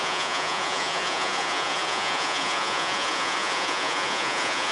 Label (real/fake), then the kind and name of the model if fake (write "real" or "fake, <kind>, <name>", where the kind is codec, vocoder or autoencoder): fake, vocoder, Vocos